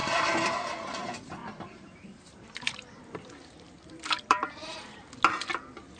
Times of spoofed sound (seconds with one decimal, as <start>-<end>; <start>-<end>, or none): 0.0-0.5; 1.4-5.0